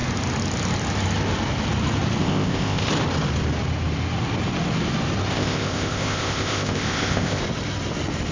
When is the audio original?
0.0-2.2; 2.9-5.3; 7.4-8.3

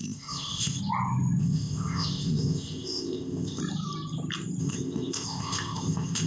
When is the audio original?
0.8-1.4; 3.6-4.6